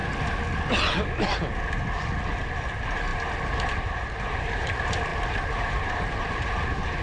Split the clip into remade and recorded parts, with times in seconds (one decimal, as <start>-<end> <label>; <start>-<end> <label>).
0.0-2.4 recorded; 2.4-7.0 remade